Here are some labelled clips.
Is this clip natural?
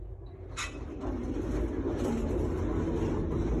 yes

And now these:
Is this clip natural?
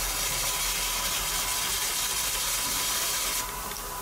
yes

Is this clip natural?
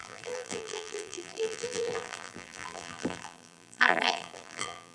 no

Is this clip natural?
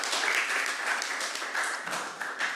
yes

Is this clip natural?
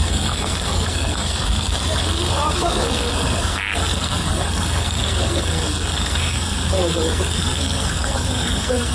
no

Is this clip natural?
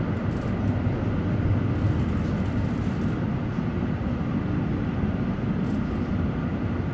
yes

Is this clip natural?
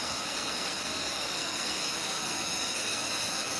no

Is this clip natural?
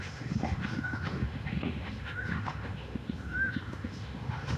no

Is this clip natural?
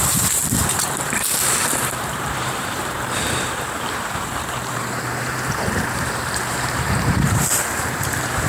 no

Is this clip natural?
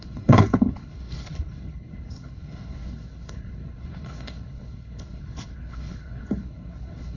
no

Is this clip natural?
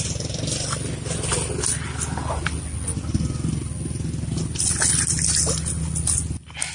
yes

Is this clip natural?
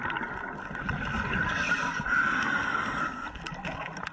yes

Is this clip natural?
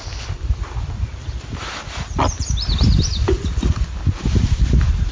no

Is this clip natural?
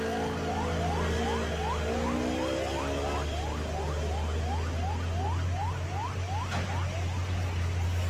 yes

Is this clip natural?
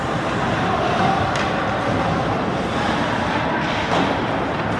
no